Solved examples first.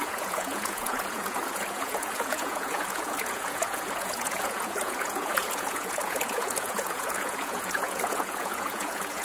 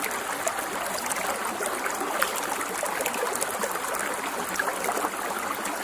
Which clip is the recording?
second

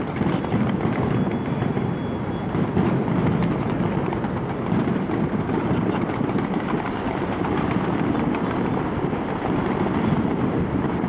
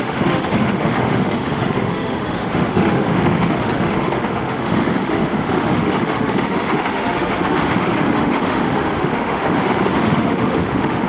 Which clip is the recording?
first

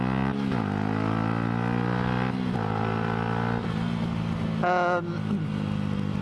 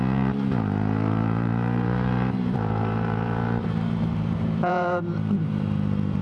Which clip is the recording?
first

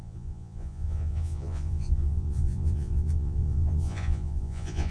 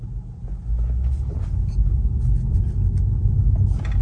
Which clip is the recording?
second